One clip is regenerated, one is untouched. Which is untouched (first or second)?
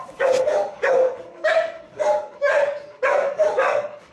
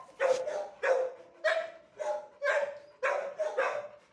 second